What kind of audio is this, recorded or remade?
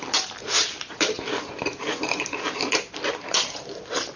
remade